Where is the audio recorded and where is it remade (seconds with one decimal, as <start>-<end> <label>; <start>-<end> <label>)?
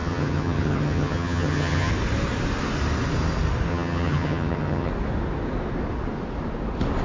0.0-1.9 remade; 1.9-3.7 recorded; 3.7-4.9 remade; 4.9-7.0 recorded